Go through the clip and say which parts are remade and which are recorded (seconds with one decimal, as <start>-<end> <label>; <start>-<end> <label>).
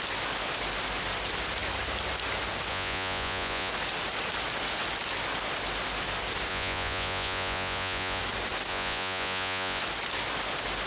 0.0-2.7 recorded; 2.7-3.7 remade; 3.7-6.5 recorded; 6.5-8.2 remade; 8.2-8.7 recorded; 8.7-9.8 remade; 9.8-10.9 recorded